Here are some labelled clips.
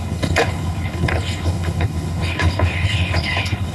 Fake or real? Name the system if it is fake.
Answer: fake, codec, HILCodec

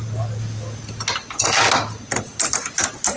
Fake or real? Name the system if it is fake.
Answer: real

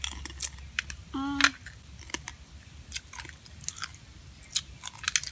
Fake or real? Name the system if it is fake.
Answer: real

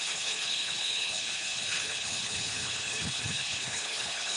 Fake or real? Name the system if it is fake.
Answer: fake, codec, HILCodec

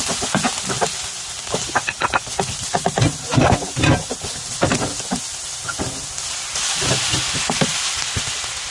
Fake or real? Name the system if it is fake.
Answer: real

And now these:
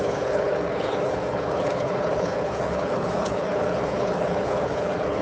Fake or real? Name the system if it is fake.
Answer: fake, codec, HILCodec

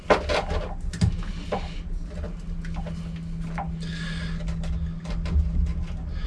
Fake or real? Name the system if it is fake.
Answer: real